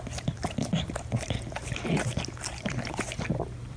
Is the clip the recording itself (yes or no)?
yes